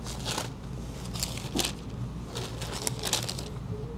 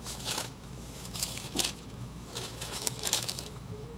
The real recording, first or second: first